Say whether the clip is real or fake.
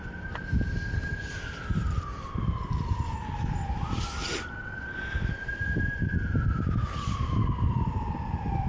real